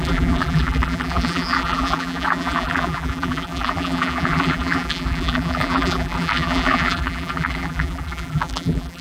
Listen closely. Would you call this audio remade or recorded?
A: remade